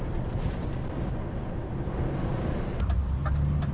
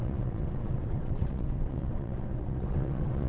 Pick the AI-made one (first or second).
second